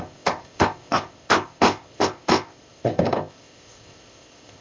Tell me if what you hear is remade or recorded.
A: remade